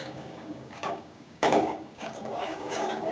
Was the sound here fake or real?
fake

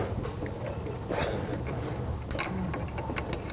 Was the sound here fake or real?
real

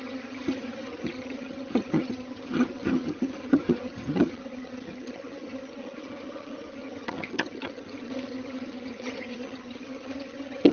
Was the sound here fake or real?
fake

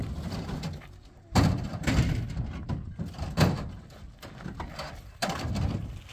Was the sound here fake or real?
real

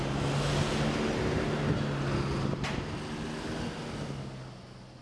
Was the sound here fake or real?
real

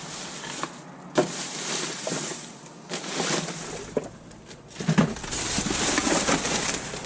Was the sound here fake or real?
real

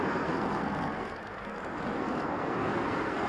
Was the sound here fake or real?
fake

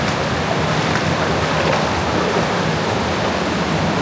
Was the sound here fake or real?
real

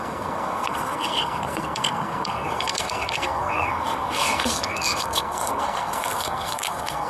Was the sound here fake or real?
fake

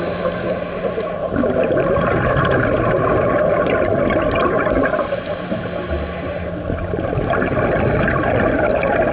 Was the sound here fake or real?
real